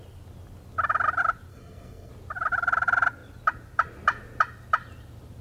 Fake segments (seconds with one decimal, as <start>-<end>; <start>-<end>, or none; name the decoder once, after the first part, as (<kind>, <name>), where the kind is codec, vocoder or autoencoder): 1.5-2.1 (codec, SNAC)